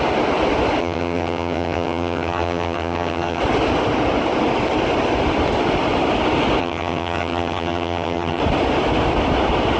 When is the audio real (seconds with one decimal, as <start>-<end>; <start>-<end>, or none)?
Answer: 0.0-0.8; 3.4-6.6; 8.4-9.8